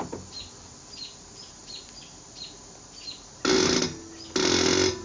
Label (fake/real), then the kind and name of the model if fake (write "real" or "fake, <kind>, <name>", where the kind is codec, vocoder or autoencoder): real